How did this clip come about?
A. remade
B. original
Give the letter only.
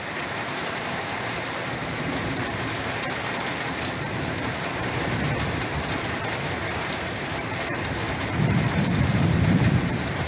A